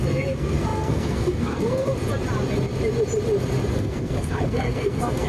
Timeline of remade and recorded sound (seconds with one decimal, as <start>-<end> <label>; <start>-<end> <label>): 0.0-1.9 remade; 1.9-3.7 recorded; 3.7-5.3 remade